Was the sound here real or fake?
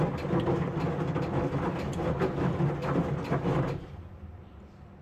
real